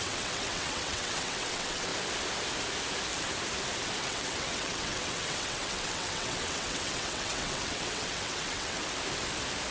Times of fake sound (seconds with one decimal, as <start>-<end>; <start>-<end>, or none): 0.0-1.9; 4.0-8.8